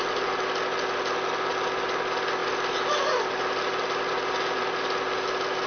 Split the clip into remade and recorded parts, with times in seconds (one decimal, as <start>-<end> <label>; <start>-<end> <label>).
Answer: 0.0-5.7 recorded